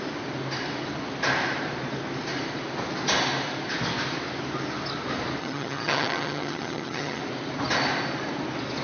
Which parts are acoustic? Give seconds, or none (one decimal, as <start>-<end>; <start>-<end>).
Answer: 0.0-5.4; 7.2-8.8